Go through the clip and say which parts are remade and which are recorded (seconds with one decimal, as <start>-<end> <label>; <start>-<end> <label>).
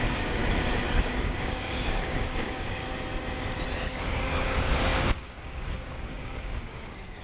0.0-0.4 remade; 0.4-1.0 recorded; 1.0-2.9 remade; 2.9-3.9 recorded; 3.9-7.2 remade